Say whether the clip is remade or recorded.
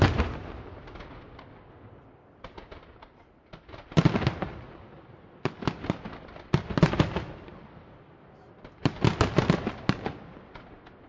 recorded